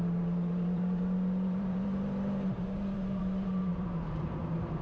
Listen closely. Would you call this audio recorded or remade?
remade